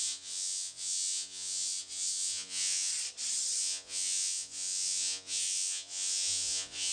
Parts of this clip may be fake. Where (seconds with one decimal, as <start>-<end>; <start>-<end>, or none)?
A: 0.0-2.9; 3.6-6.9